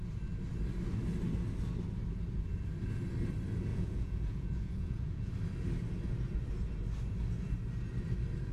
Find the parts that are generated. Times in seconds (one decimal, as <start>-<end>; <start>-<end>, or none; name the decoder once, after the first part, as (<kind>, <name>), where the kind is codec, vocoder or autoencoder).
3.7-5.3 (vocoder, Vocos)